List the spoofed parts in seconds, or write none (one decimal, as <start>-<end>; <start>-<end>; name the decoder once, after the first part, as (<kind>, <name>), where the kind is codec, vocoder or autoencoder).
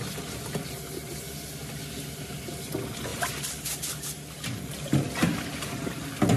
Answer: none